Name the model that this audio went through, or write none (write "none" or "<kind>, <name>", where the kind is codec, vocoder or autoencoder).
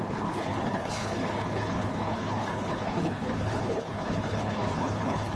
codec, HILCodec